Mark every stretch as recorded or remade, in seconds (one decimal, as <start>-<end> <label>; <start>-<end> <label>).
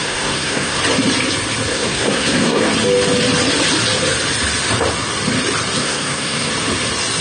0.0-0.8 remade; 0.8-1.7 recorded; 1.7-2.6 remade; 2.6-5.8 recorded; 5.8-6.5 remade; 6.5-7.2 recorded